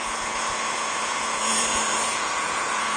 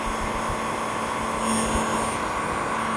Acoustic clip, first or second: second